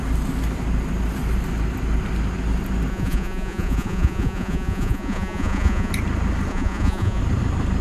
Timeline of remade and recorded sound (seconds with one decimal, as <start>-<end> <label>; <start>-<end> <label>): 0.0-2.9 recorded; 2.9-5.9 remade; 5.9-6.5 recorded; 6.5-7.2 remade; 7.2-7.8 recorded